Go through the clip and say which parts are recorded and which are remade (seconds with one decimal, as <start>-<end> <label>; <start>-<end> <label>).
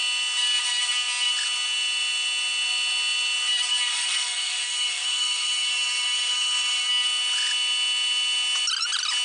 0.0-3.9 recorded; 3.9-6.9 remade; 6.9-9.2 recorded